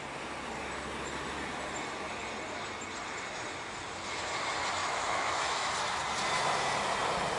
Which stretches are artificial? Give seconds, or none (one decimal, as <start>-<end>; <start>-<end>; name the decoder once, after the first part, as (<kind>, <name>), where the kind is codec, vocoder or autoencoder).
4.8-5.7 (autoencoder, DAC-VAE)

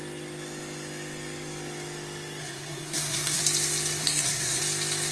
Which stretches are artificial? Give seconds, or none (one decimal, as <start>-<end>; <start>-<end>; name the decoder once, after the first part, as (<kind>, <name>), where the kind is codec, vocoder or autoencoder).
2.4-3.4 (codec, SNAC); 4.0-4.6

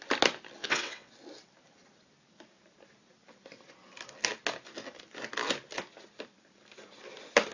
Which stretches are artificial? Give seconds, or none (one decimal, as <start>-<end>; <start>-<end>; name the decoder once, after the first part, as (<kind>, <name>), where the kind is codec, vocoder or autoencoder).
0.6-1.1 (vocoder, WaveNeXt)